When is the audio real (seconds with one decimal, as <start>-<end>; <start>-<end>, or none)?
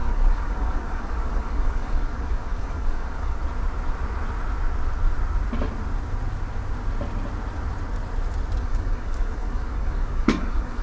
3.4-8.6